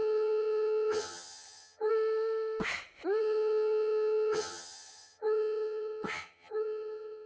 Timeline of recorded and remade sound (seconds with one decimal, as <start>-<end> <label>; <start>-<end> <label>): 0.0-1.9 remade; 1.9-3.2 recorded; 3.2-7.3 remade